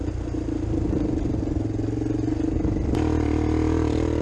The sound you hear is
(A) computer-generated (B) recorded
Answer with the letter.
B